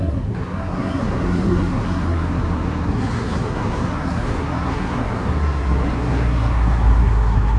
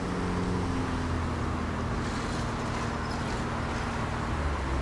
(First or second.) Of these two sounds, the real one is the second